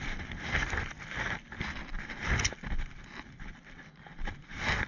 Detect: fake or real real